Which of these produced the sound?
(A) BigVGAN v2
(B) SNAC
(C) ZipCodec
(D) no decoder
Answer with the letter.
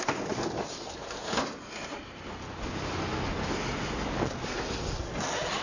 D